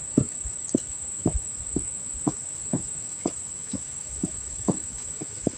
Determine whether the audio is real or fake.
fake